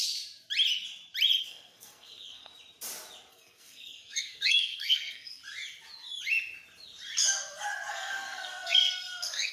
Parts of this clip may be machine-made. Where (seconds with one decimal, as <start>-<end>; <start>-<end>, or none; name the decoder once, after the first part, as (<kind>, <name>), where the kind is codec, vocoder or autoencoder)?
1.4-2.5 (codec, SNAC); 3.3-5.4; 7.9-9.5